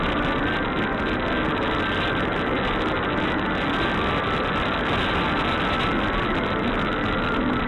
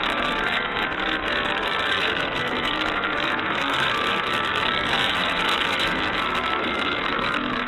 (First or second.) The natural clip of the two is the first